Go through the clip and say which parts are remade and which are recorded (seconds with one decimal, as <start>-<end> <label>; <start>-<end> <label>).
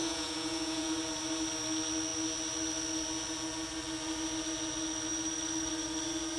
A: 0.0-0.9 remade; 0.9-6.4 recorded